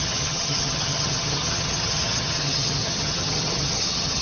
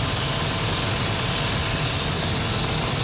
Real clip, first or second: second